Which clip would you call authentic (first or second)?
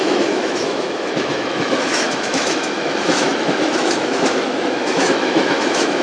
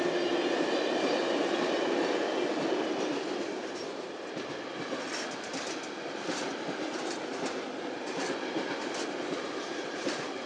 second